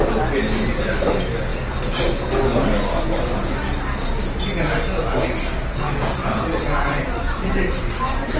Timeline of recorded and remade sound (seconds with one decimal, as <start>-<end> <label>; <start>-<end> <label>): 0.0-6.2 recorded; 6.2-7.9 remade; 7.9-8.4 recorded